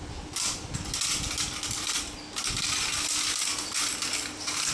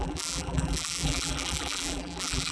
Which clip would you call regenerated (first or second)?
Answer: second